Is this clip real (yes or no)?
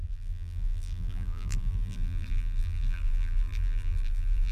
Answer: no